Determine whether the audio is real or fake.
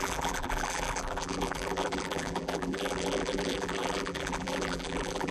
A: fake